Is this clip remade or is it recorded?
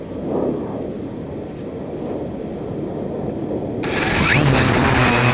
recorded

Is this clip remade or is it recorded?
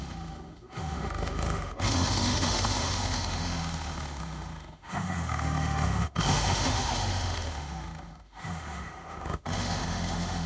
remade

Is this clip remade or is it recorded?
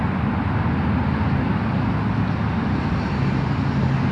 recorded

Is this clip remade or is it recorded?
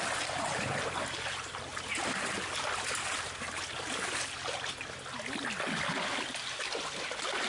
recorded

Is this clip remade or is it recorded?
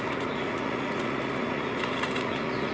remade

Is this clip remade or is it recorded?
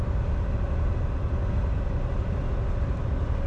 recorded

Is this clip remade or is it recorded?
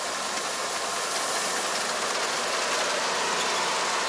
recorded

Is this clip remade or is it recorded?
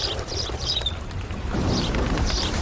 remade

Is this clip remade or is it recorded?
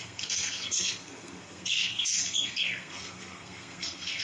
remade